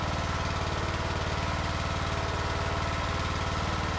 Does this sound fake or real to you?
real